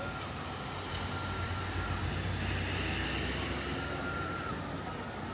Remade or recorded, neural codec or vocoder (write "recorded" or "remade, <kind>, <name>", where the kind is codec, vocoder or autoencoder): recorded